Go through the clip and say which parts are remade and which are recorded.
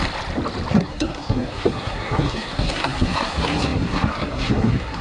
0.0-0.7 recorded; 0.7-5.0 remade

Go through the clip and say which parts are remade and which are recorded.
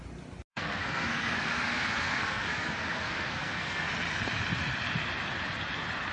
0.0-0.5 recorded; 0.5-3.9 remade; 3.9-6.1 recorded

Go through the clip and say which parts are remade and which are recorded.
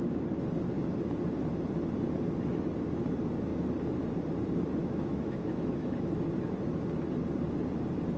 0.0-4.8 recorded; 4.8-6.1 remade; 6.1-8.2 recorded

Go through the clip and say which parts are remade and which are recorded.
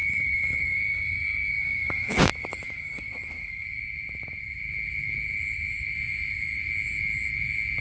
0.0-3.8 remade; 3.8-7.8 recorded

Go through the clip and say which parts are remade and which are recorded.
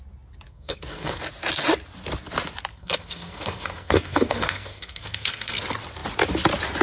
0.0-0.5 recorded; 0.5-1.2 remade; 1.2-2.7 recorded; 2.7-5.6 remade; 5.6-6.8 recorded